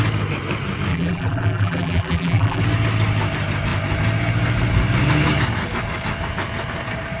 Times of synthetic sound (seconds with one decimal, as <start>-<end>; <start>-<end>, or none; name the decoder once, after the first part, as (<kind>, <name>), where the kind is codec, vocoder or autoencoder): 0.9-2.6 (vocoder, BigVGAN v2)